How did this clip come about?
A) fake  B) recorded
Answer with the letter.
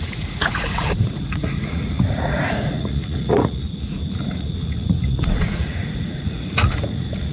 A